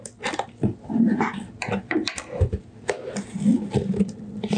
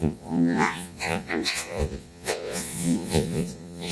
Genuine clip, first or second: first